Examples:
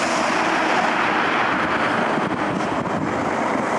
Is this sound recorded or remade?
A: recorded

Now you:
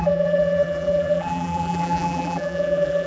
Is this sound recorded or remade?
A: remade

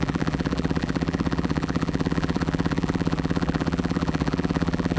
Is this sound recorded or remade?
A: remade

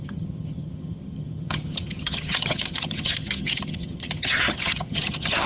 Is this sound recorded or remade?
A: remade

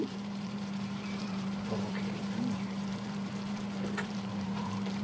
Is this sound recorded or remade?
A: remade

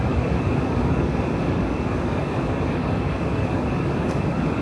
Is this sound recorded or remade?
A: remade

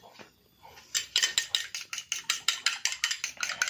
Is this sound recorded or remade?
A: recorded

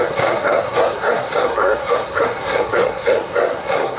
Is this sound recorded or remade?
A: remade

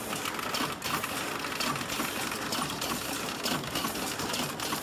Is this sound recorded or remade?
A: recorded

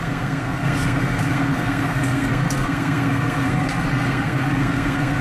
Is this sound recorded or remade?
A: remade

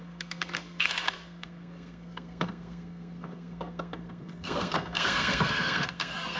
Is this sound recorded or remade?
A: remade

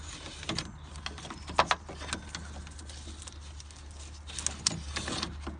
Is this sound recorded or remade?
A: recorded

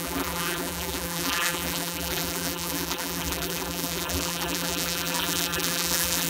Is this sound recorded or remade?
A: remade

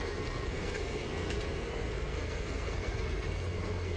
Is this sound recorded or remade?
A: remade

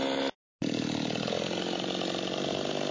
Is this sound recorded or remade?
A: recorded